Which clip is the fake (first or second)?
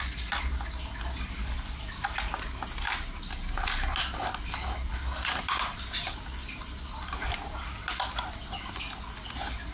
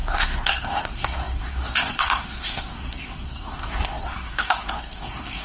second